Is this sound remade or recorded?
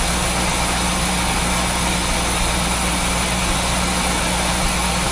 recorded